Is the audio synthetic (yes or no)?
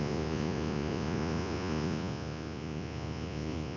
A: yes